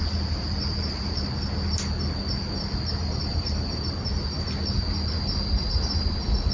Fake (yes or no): no